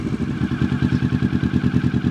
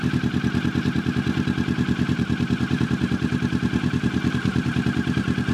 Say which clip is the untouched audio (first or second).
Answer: first